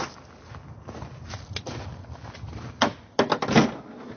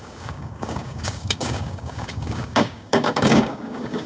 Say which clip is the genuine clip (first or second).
first